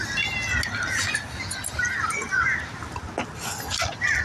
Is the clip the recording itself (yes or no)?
yes